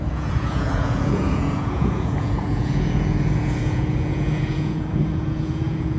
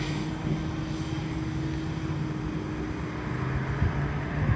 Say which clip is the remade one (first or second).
first